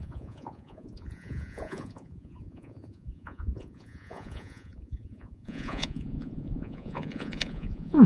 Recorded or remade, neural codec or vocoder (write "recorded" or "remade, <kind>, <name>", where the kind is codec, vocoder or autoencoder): remade, vocoder, Vocos